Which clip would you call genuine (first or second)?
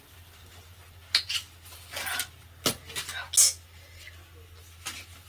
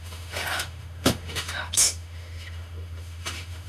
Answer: first